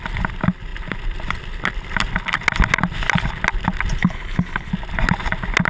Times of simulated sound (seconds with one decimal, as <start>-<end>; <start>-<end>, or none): 4.0-4.7